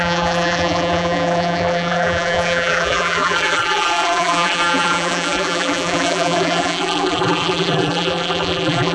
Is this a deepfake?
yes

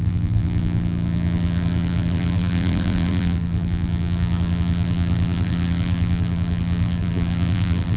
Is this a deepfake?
yes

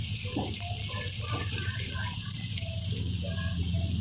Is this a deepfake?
yes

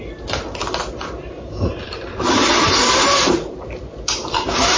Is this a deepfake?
yes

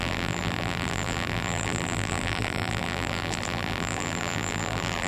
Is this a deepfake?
yes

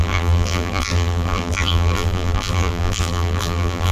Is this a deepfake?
yes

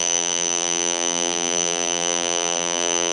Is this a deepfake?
yes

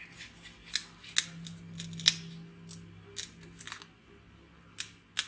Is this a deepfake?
no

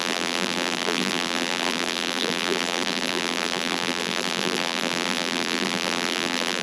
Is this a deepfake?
yes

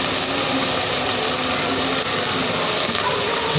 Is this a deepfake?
no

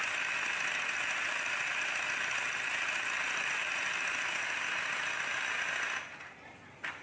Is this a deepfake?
no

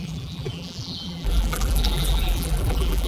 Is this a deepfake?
yes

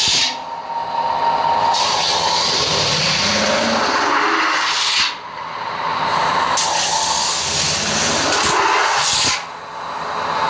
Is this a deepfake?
no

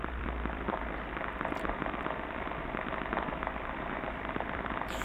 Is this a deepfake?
yes